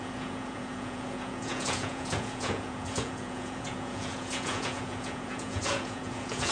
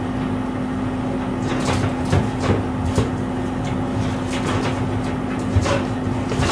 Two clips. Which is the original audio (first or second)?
second